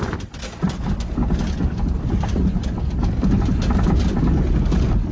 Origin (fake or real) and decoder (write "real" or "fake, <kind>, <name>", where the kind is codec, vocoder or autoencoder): real